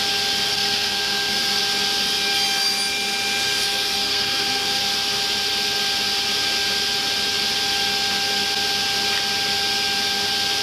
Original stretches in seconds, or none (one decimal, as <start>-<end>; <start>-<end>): 0.0-0.5; 1.6-3.4; 4.8-10.6